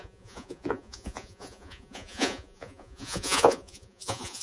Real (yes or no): no